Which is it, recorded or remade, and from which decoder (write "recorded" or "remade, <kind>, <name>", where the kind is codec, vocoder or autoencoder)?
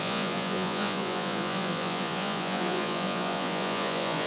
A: remade, vocoder, Vocos